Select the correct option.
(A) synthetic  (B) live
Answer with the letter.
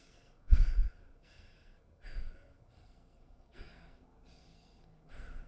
A